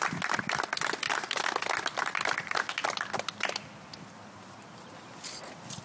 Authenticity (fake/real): fake